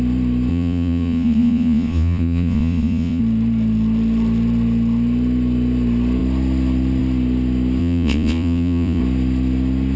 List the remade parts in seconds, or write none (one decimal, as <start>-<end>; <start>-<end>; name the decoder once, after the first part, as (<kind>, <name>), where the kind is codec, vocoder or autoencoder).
0.5-3.2 (vocoder, Vocos); 7.8-9.0